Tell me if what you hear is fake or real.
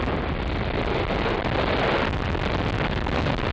real